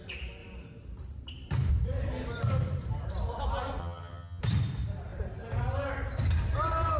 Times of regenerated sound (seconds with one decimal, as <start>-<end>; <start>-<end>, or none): 3.8-4.4